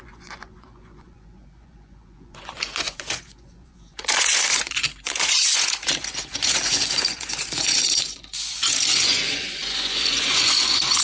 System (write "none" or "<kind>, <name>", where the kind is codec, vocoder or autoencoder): vocoder, Vocos